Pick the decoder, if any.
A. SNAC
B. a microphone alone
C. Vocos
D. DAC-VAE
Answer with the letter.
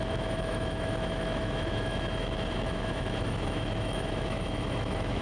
D